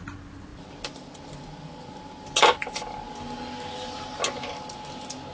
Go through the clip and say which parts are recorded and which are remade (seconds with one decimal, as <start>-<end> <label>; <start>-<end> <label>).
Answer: 0.0-5.3 recorded